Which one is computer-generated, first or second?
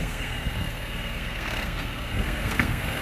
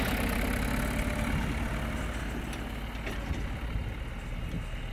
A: first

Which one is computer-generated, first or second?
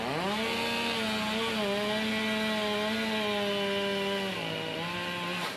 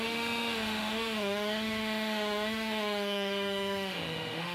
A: second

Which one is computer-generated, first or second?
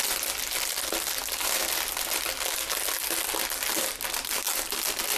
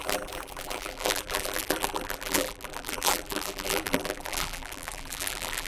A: second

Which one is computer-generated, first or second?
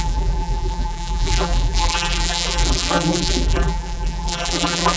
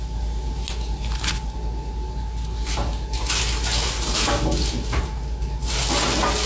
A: first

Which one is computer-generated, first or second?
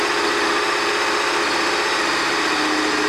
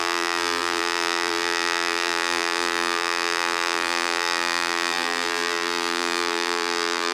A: second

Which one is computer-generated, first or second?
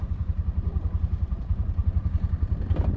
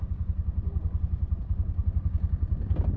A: first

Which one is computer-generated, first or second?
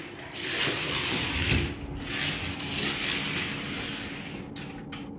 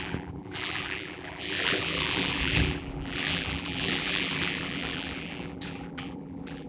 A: second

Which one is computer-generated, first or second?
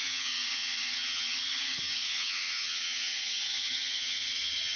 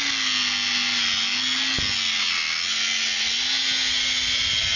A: first